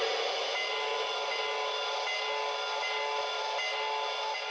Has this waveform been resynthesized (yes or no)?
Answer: no